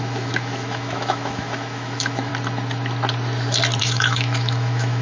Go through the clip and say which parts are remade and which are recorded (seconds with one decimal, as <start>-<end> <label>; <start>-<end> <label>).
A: 0.0-2.3 remade; 2.3-3.8 recorded; 3.8-5.0 remade